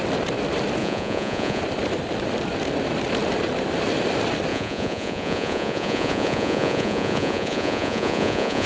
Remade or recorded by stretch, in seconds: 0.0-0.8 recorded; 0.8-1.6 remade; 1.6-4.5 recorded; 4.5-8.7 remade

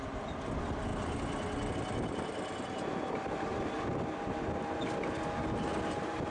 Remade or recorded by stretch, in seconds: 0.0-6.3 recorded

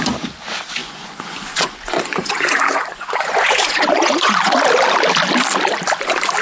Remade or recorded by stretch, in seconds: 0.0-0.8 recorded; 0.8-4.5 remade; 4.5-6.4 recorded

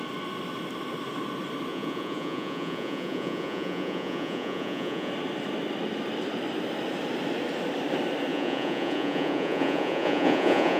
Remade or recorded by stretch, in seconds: 0.0-1.7 recorded; 1.7-5.1 remade; 5.1-8.3 recorded; 8.3-10.8 remade